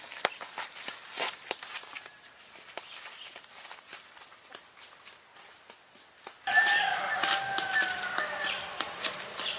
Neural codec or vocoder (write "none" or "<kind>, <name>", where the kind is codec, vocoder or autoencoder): none